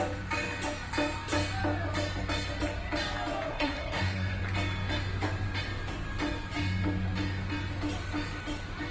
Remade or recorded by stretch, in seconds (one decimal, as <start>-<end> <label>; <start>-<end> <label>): 0.0-3.5 recorded; 3.5-4.4 remade; 4.4-8.9 recorded